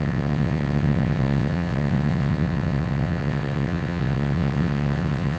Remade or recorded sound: remade